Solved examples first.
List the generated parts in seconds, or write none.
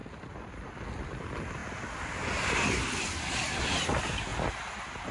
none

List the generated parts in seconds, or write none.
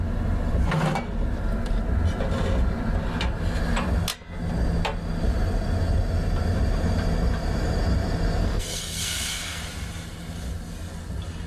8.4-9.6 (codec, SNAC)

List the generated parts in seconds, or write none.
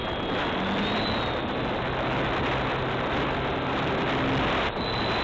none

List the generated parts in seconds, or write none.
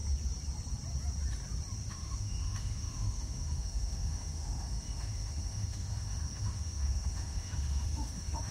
1.9-8.5 (autoencoder, DAC-VAE)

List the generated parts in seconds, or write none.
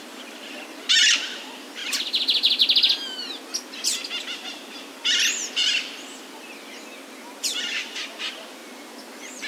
none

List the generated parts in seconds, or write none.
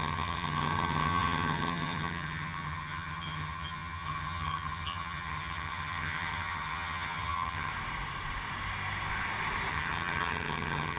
0.0-7.7 (vocoder, HiFi-GAN); 9.7-11.0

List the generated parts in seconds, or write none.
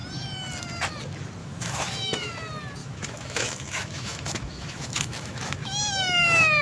1.4-2.3 (autoencoder, DAC-VAE); 2.8-6.6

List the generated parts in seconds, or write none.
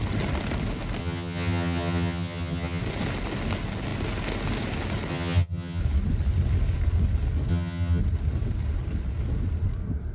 1.0-2.8 (vocoder, HiFi-GAN); 5.1-5.8; 7.5-8.0